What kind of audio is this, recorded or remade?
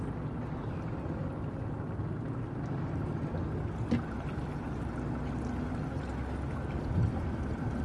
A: recorded